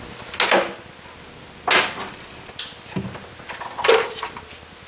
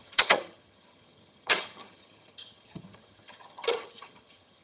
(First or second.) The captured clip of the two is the first